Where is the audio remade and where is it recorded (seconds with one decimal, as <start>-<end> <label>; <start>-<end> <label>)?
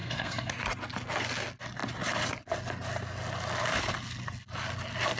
0.0-0.5 remade; 0.5-5.2 recorded